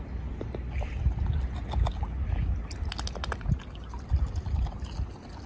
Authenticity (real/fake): real